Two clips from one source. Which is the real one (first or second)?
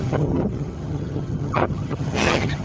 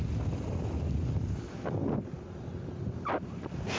second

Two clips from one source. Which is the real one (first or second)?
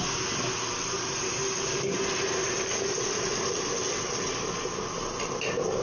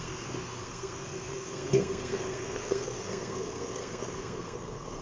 first